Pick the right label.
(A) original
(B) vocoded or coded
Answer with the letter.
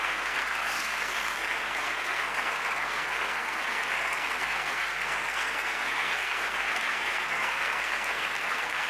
B